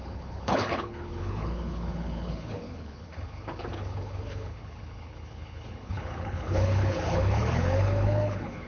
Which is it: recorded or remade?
remade